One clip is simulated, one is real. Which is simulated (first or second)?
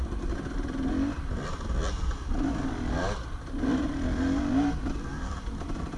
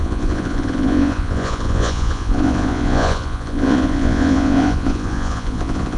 second